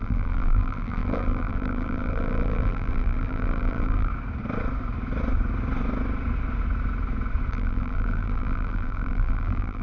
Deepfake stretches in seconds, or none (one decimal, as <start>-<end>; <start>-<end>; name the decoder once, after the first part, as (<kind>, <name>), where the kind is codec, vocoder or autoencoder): 0.0-4.1 (vocoder, BigVGAN v2); 7.5-9.8